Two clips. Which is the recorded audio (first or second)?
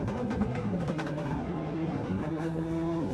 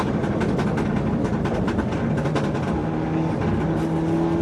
second